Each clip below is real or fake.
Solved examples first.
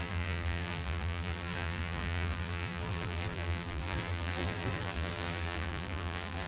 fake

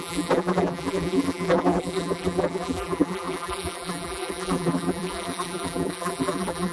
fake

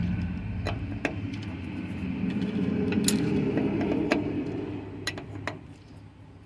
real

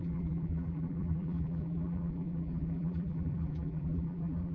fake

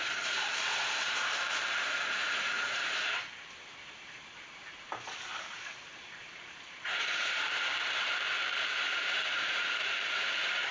fake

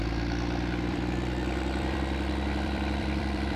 fake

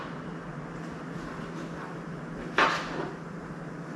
real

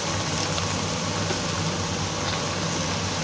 real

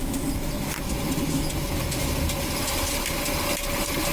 real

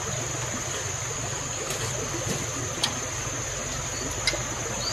real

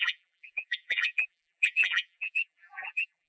fake